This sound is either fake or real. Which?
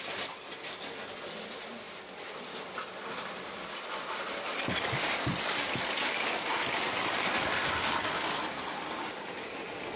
real